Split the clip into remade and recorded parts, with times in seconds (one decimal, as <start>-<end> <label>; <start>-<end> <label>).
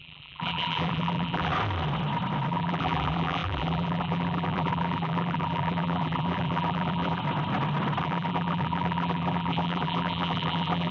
0.0-1.5 remade; 1.5-2.5 recorded; 2.5-7.2 remade; 7.2-8.0 recorded; 8.0-10.9 remade